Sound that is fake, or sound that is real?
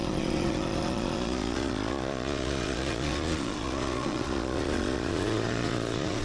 fake